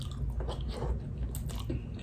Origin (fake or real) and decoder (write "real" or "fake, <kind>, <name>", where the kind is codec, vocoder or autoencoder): real